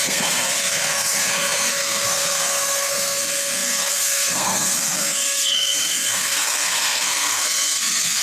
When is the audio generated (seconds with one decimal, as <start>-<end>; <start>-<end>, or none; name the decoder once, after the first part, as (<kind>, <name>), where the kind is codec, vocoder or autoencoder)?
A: 0.0-8.2 (codec, SNAC)